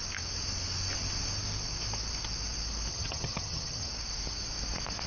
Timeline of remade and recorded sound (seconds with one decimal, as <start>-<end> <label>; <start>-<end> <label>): 0.0-2.9 recorded; 2.9-3.9 remade; 3.9-5.1 recorded